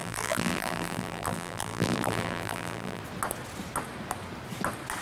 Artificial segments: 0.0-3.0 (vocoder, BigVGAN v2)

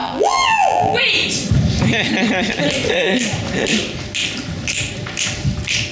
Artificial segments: 0.0-1.0 (vocoder, BigVGAN v2)

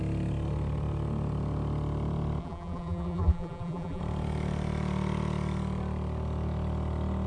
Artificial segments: 2.4-4.0 (vocoder, BigVGAN v2)

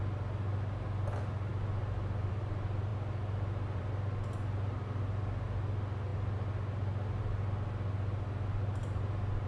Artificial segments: none

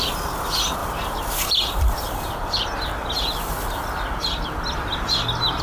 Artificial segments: 0.8-1.4 (vocoder, BigVGAN v2)

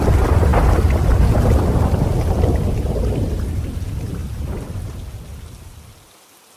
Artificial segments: none

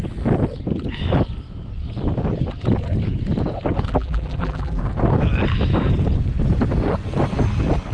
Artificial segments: 3.9-4.8 (vocoder, BigVGAN v2)

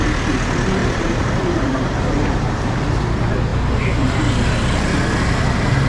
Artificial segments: 0.8-3.0 (vocoder, BigVGAN v2); 3.5-4.2